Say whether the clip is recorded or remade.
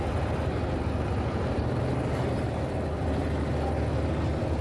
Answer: recorded